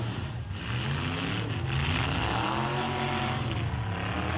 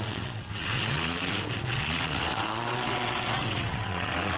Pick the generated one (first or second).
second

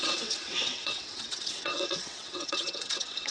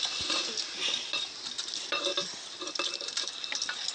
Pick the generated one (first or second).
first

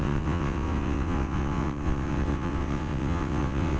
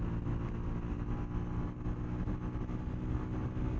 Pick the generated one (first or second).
first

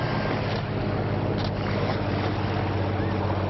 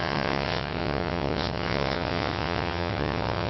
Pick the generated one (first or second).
second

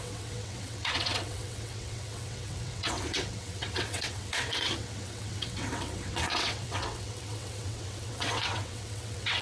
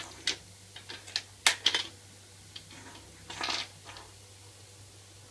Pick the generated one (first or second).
first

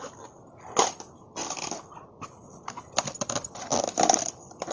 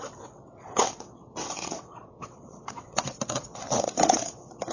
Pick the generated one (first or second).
second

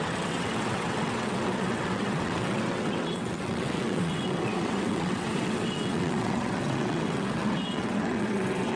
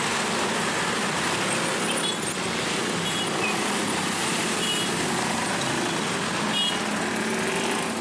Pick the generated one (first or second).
first